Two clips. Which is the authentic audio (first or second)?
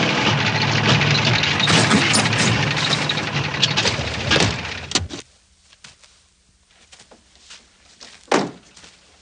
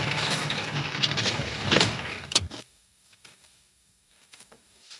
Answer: first